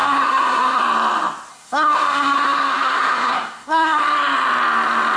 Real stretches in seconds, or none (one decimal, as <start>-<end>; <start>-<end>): 0.8-1.5; 4.0-5.2